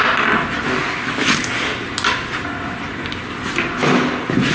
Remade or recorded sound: recorded